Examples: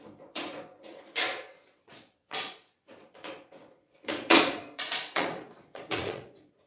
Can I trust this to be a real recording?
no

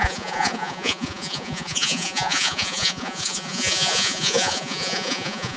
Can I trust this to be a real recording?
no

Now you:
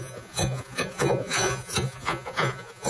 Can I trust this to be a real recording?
no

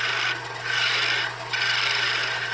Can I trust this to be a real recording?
yes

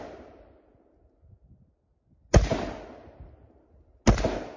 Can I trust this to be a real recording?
yes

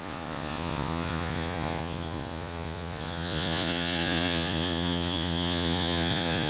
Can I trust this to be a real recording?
no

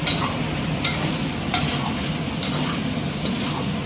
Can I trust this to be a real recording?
yes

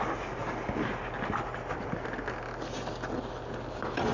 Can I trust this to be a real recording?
yes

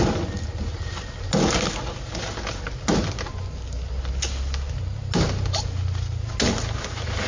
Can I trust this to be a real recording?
yes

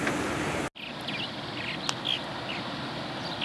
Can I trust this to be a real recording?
yes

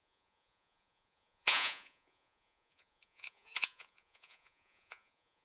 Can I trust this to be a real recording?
no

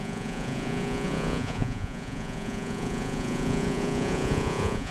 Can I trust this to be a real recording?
no